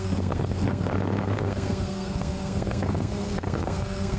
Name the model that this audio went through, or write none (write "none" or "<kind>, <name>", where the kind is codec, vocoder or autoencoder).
codec, SNAC